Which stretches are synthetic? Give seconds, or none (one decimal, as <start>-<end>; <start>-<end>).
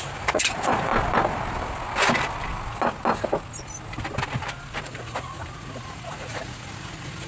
0.0-0.9; 4.8-7.3